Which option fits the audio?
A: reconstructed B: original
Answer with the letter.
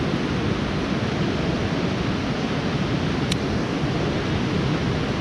B